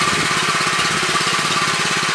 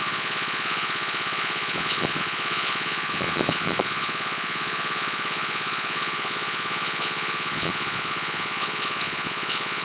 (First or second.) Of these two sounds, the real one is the first